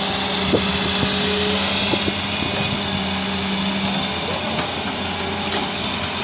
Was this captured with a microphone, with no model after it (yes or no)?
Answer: yes